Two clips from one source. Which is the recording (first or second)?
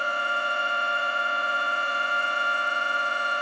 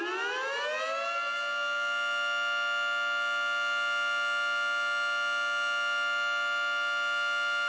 second